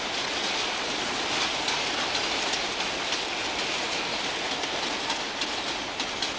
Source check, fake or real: real